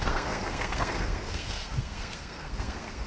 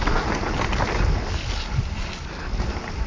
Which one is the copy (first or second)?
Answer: first